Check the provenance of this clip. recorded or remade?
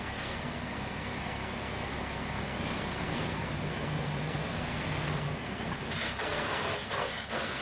remade